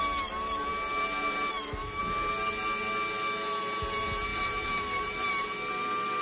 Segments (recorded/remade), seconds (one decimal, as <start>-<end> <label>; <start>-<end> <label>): 0.0-4.3 recorded; 4.3-5.3 remade; 5.3-6.2 recorded